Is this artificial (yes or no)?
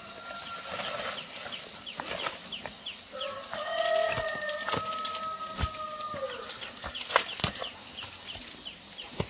no